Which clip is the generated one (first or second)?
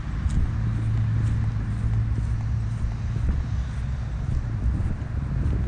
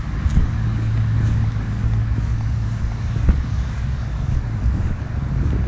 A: second